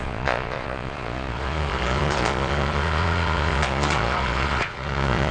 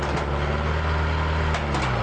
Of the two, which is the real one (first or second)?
second